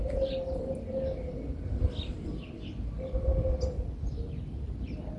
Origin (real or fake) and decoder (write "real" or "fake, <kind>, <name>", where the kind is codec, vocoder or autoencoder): real